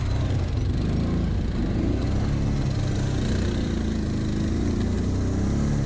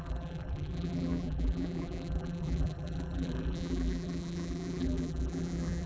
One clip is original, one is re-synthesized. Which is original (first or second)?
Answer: first